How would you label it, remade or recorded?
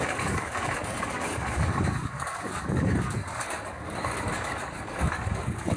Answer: remade